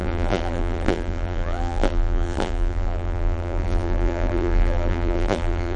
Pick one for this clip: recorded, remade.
remade